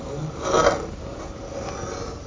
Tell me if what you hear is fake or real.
real